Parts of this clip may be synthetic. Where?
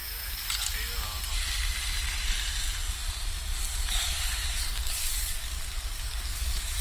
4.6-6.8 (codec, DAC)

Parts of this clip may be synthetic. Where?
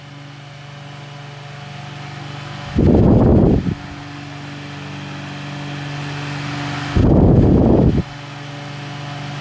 none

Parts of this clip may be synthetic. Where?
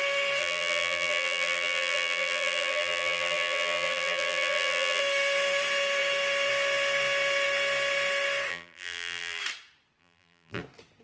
0.4-5.0 (vocoder, BigVGAN v2); 8.5-9.4; 10.0-10.6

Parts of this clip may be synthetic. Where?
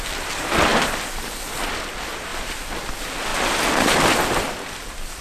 0.7-1.5 (vocoder, BigVGAN v2); 2.3-2.9; 3.3-5.2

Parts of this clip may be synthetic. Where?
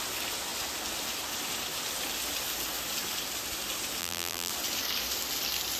4.0-4.5 (vocoder, BigVGAN v2)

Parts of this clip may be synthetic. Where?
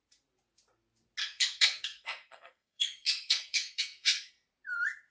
1.2-4.3 (codec, SNAC)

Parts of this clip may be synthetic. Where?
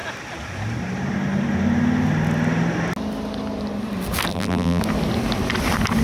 4.3-4.8 (vocoder, BigVGAN v2)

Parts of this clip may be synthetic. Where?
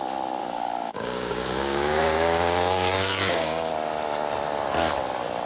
0.4-3.7 (codec, DAC)